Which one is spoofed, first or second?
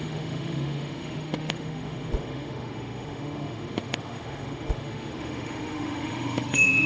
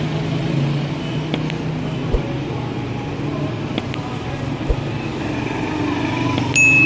first